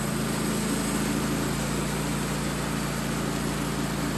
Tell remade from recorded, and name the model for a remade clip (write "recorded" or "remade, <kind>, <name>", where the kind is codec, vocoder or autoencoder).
recorded